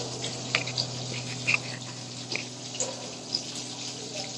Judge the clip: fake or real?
real